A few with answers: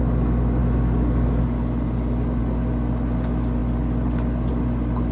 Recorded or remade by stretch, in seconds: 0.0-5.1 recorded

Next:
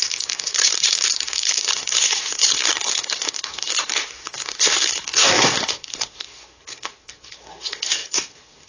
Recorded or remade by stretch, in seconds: 0.0-8.7 remade

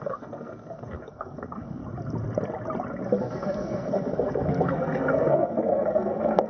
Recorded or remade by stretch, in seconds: 0.0-1.8 remade; 1.8-3.2 recorded; 3.2-6.5 remade